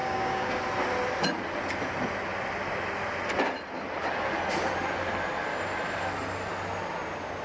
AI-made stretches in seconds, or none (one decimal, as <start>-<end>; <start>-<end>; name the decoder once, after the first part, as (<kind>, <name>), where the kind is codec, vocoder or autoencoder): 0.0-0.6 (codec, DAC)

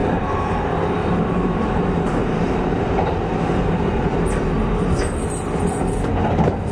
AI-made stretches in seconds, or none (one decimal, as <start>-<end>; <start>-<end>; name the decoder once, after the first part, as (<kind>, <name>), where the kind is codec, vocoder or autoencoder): 0.0-0.6 (vocoder, BigVGAN v2); 1.0-4.1

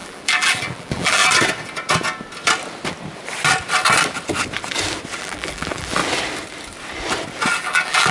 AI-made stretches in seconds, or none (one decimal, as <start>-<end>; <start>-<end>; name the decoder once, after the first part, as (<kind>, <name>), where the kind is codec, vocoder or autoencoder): 0.0-1.2 (vocoder, BigVGAN v2); 5.2-6.0; 7.5-8.1